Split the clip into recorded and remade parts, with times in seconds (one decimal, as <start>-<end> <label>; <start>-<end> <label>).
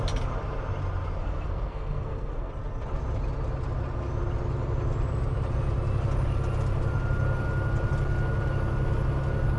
0.0-1.2 recorded; 1.2-2.5 remade; 2.5-9.6 recorded